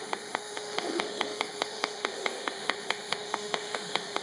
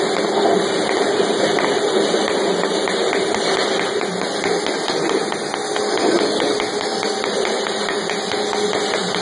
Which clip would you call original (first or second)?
second